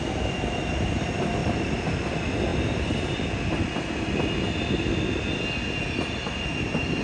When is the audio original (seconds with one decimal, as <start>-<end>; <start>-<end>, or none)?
0.0-1.4; 2.0-7.0